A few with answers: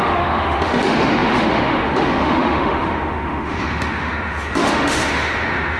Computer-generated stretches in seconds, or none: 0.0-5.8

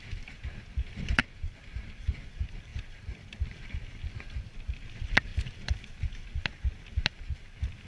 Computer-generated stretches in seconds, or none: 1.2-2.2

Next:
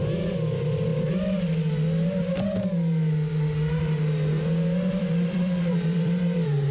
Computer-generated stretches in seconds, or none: 0.0-0.9; 4.9-6.7